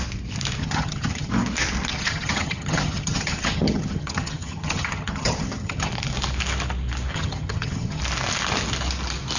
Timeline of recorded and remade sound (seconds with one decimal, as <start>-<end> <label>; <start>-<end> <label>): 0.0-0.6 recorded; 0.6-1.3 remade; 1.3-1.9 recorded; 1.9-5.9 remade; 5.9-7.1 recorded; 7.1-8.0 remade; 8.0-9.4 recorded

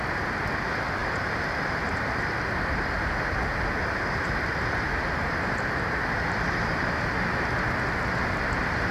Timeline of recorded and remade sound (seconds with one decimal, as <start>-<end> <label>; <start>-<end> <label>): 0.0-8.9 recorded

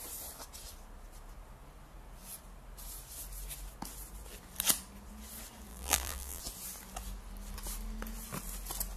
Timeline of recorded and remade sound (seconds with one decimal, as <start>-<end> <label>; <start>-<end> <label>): 0.0-5.7 recorded; 5.7-6.4 remade; 6.4-9.0 recorded

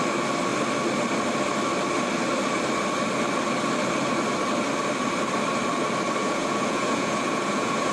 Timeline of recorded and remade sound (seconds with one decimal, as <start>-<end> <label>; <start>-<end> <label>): 0.0-6.2 recorded; 6.2-7.9 remade

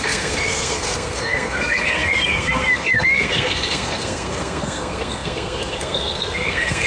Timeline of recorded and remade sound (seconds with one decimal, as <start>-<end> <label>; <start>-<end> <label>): 0.0-6.9 remade

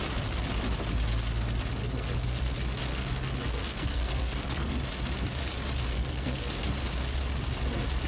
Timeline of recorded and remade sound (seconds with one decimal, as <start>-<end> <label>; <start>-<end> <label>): 0.0-1.8 recorded; 1.8-2.4 remade; 2.4-2.9 recorded; 2.9-4.7 remade; 4.7-5.9 recorded; 5.9-6.5 remade; 6.5-8.1 recorded

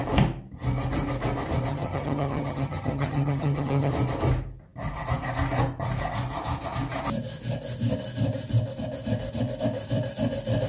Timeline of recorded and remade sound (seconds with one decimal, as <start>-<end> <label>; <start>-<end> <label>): 0.0-1.7 recorded; 1.7-3.9 remade; 3.9-10.7 recorded